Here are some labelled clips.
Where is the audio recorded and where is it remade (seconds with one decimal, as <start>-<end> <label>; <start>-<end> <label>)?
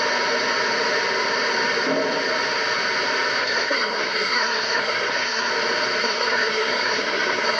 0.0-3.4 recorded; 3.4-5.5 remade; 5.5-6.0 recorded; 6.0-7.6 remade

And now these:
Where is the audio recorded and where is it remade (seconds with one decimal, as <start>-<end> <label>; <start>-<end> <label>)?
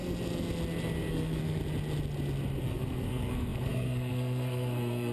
0.0-1.1 recorded; 1.1-1.6 remade; 1.6-2.6 recorded; 2.6-5.1 remade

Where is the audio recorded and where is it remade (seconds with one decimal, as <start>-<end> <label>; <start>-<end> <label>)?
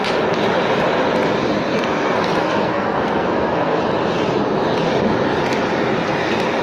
0.0-1.7 recorded; 1.7-3.8 remade; 3.8-6.6 recorded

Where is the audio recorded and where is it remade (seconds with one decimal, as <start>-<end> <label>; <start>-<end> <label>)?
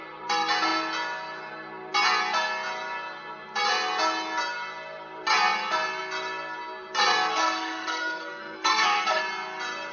0.0-7.3 recorded; 7.3-9.2 remade; 9.2-9.9 recorded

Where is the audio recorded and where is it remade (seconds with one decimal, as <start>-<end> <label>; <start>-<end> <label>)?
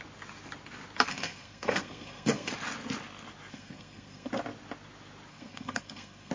0.0-1.1 recorded; 1.1-2.5 remade; 2.5-3.5 recorded; 3.5-4.3 remade; 4.3-5.3 recorded; 5.3-6.3 remade